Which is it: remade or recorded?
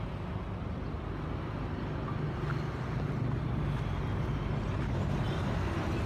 recorded